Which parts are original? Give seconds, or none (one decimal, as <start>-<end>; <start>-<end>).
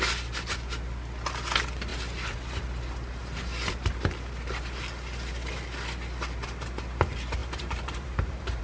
0.0-7.4